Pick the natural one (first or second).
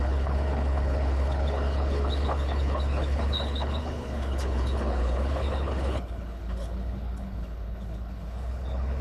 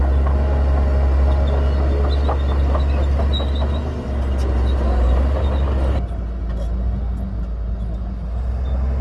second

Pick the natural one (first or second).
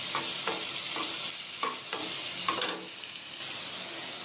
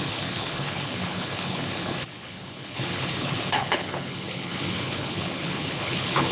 first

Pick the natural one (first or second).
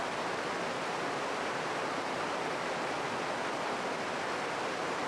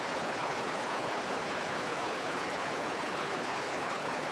first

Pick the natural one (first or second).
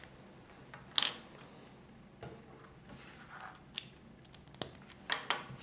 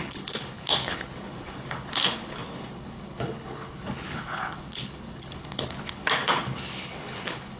first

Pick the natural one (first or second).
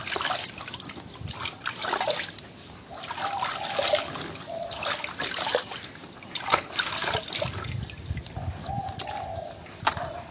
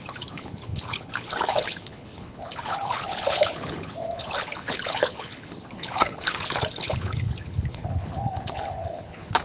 first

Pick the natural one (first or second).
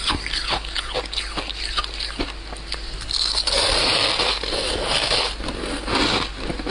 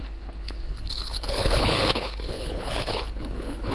first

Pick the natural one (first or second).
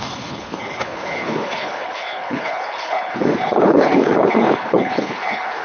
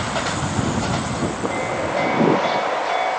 second